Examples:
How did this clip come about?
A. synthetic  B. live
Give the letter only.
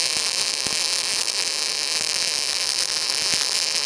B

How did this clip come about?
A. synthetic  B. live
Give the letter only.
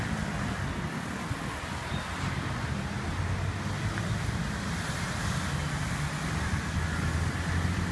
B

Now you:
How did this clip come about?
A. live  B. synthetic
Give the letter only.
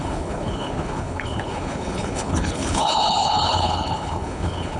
B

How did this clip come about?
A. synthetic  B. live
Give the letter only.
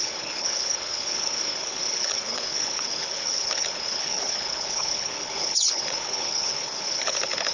A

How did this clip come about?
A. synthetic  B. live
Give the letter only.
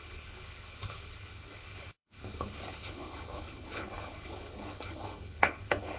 A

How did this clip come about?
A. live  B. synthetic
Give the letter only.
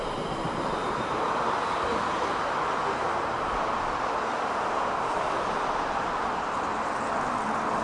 A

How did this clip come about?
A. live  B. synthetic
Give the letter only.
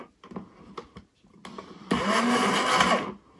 A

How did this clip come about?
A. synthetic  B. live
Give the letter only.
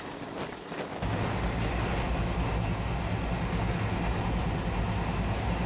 B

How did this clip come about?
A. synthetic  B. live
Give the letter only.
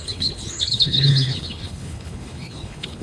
A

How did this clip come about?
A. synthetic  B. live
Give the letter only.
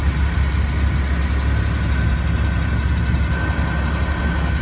B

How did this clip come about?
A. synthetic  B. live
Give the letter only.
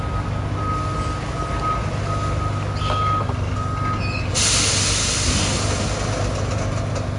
B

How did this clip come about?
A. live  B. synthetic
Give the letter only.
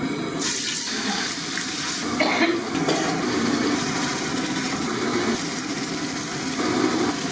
A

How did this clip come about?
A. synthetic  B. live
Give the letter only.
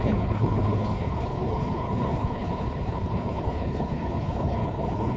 A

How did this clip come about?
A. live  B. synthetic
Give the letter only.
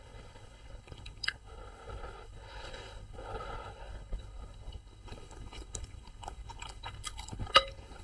B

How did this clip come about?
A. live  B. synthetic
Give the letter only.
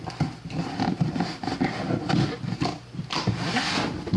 A